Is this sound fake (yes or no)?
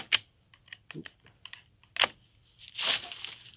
no